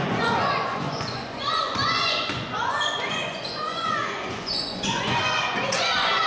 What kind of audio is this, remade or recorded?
remade